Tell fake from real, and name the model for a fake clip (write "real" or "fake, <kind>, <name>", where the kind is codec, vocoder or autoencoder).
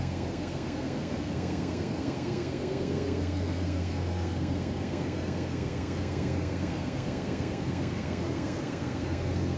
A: fake, codec, SNAC